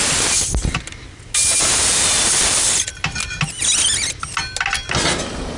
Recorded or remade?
recorded